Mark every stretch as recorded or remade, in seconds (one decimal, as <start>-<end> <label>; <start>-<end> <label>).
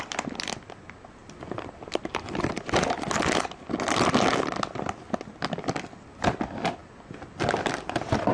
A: 0.0-8.3 recorded